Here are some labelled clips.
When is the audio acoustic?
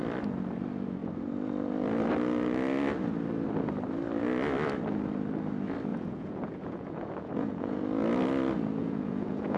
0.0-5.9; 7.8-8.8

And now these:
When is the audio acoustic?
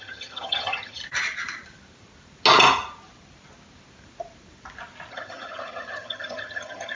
1.0-5.1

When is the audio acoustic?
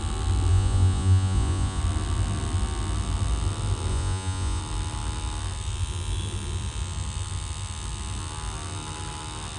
0.0-0.5; 1.8-3.9; 4.6-9.6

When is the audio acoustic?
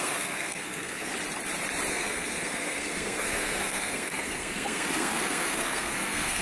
1.1-1.9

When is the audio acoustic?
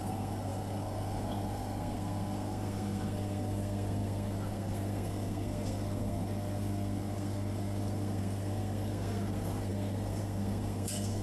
none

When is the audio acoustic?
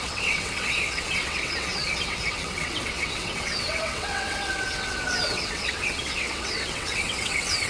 none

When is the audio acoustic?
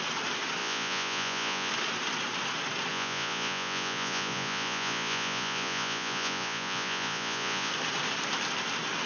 0.0-0.6; 1.7-2.9; 7.7-9.1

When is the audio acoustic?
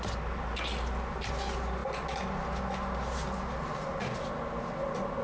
0.0-5.2